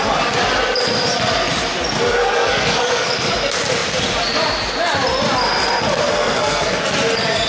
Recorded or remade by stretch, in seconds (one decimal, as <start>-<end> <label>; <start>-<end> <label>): 0.0-2.2 recorded; 2.2-3.1 remade; 3.1-6.0 recorded; 6.0-6.8 remade; 6.8-7.5 recorded

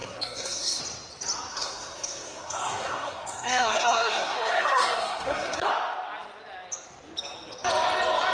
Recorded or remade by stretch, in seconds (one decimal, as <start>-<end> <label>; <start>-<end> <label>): 0.0-0.8 remade; 0.8-1.5 recorded; 1.5-5.7 remade; 5.7-8.3 recorded

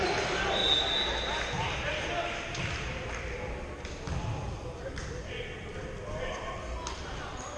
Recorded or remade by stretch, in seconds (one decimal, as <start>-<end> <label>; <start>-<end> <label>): 0.0-0.6 remade; 0.6-4.6 recorded; 4.6-5.8 remade; 5.8-7.6 recorded

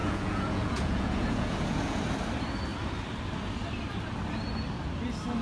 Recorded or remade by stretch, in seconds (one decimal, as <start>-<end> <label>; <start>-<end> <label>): 0.0-2.0 remade; 2.0-5.4 recorded